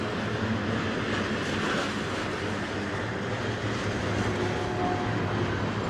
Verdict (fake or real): real